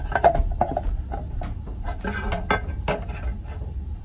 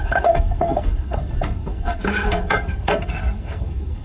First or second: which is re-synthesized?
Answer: second